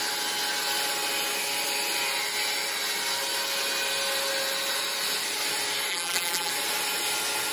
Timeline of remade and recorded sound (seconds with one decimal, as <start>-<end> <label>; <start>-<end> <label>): 0.0-5.9 recorded; 5.9-6.5 remade; 6.5-7.5 recorded